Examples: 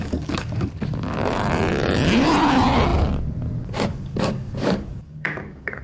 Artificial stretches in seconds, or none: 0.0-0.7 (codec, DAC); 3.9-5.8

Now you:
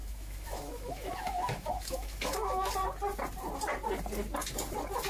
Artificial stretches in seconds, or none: 0.0-2.7 (autoencoder, DAC-VAE)

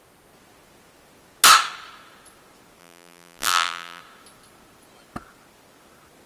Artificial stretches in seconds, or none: 2.8-4.0 (vocoder, BigVGAN v2)